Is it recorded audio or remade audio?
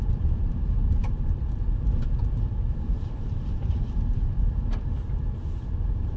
remade